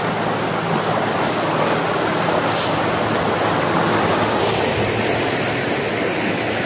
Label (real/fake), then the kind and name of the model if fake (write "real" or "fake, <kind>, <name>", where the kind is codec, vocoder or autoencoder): real